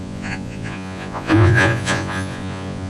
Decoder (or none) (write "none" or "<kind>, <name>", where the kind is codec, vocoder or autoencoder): vocoder, Vocos